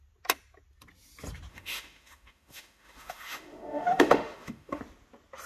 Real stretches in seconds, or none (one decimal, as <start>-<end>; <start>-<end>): 0.0-1.5; 4.8-5.5